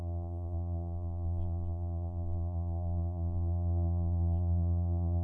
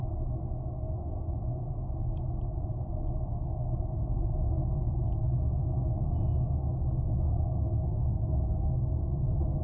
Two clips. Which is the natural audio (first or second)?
second